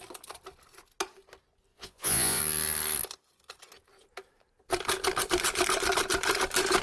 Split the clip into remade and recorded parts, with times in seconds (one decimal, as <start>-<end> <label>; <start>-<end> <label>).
0.0-1.7 recorded; 1.7-2.4 remade; 2.4-6.8 recorded